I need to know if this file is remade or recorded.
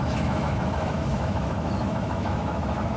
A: remade